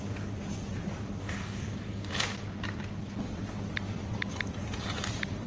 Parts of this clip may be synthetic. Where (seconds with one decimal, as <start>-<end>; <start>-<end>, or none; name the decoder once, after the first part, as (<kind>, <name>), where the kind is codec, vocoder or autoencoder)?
1.2-2.1 (codec, DAC)